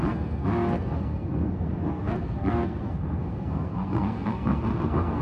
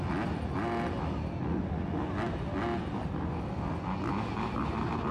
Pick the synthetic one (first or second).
first